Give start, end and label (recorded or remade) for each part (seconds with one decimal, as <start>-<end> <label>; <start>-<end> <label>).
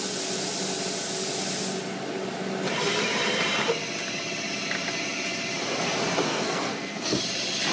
0.0-6.3 recorded; 6.3-7.2 remade; 7.2-7.7 recorded